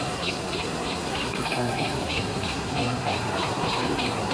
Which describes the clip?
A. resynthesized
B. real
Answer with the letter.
A